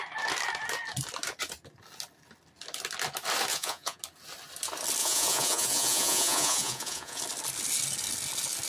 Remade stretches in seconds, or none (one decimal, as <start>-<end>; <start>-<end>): 3.5-4.0; 5.0-7.2